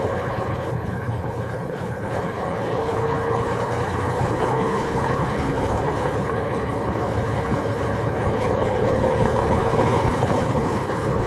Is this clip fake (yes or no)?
yes